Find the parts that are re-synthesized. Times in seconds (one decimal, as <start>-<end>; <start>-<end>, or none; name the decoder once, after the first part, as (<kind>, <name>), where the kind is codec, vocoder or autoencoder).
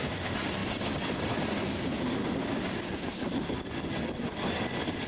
0.0-2.2 (vocoder, BigVGAN v2)